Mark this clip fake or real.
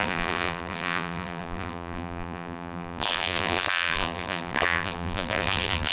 fake